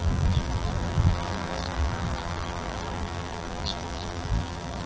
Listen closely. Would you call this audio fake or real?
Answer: fake